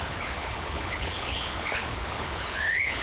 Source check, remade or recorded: remade